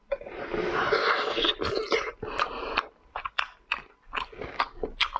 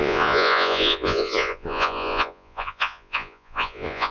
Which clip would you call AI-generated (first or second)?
second